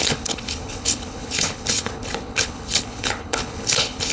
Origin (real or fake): fake